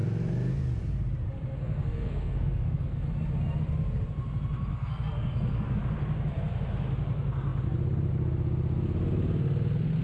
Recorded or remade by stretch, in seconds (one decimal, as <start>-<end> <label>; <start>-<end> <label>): 0.0-1.6 recorded; 1.6-3.0 remade; 3.0-4.7 recorded; 4.7-5.8 remade; 5.8-10.0 recorded